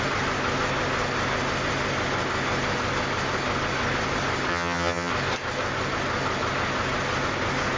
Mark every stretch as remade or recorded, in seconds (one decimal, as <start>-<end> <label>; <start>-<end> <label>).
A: 0.0-4.5 recorded; 4.5-5.1 remade; 5.1-7.8 recorded

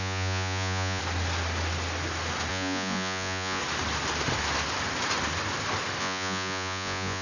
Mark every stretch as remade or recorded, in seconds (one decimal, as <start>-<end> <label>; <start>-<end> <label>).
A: 0.0-1.0 remade; 1.0-2.5 recorded; 2.5-3.6 remade; 3.6-6.0 recorded; 6.0-7.2 remade

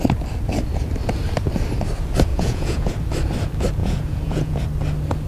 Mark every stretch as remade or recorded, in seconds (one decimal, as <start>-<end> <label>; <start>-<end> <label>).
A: 0.0-2.3 recorded; 2.3-2.9 remade; 2.9-3.8 recorded; 3.8-4.6 remade; 4.6-5.3 recorded

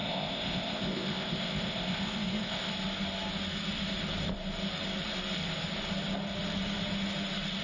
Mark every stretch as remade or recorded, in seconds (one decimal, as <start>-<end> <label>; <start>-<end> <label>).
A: 0.0-2.7 remade; 2.7-7.6 recorded

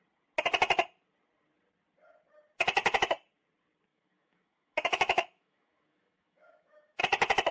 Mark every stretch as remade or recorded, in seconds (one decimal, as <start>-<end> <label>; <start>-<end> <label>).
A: 0.0-3.9 recorded; 3.9-7.0 remade; 7.0-7.5 recorded

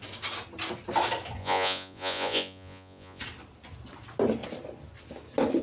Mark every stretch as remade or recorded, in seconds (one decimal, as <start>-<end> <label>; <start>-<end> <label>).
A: 0.0-1.4 recorded; 1.4-3.2 remade; 3.2-5.6 recorded